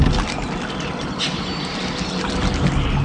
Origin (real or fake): real